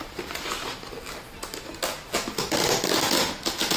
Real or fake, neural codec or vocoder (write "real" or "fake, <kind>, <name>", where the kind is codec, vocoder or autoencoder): real